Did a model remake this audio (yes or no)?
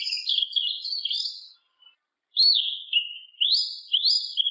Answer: no